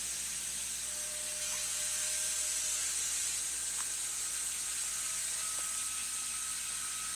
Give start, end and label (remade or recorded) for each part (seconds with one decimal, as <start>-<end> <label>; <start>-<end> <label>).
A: 0.0-7.1 recorded